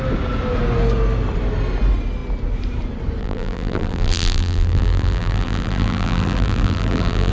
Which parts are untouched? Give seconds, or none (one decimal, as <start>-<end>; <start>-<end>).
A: 0.0-3.2